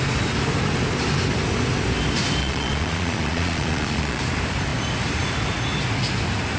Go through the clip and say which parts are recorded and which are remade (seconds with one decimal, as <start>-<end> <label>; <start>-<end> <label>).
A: 0.0-2.4 recorded; 2.4-4.2 remade; 4.2-6.6 recorded